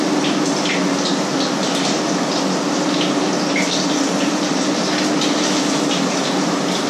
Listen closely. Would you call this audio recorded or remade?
recorded